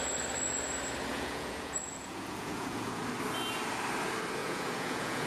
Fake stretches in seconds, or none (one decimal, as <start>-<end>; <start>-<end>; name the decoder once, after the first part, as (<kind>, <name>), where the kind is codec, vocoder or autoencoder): 1.1-3.0 (vocoder, Vocos); 4.4-5.3